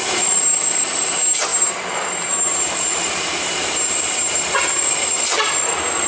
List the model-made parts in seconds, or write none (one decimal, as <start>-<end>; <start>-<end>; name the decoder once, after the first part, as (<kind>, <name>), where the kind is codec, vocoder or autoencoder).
1.5-5.1 (vocoder, BigVGAN v2)